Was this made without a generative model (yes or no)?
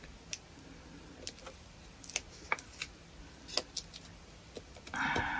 yes